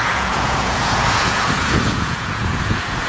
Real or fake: fake